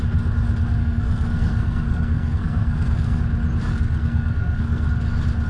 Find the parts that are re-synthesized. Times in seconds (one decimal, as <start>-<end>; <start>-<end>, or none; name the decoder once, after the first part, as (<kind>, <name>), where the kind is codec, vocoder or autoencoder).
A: 0.8-3.2 (codec, SNAC); 3.7-4.9